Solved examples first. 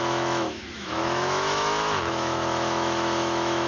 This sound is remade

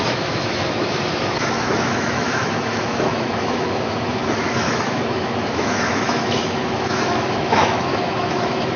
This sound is remade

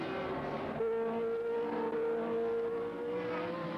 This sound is recorded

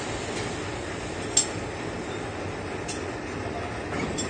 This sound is recorded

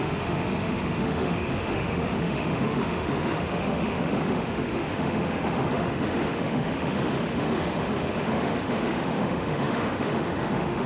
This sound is remade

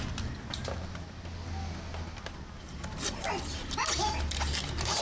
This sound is recorded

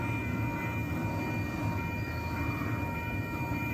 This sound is recorded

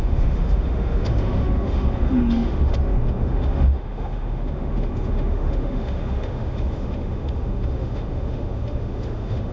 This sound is remade